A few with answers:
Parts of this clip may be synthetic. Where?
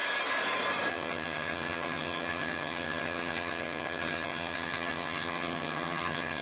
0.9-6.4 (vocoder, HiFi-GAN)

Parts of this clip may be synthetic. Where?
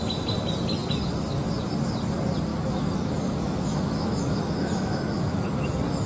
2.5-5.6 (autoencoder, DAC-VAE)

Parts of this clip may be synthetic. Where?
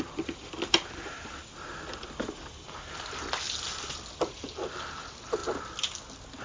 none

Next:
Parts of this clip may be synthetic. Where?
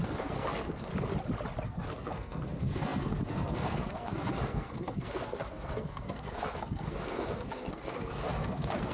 0.0-0.9 (codec, SNAC); 1.6-8.9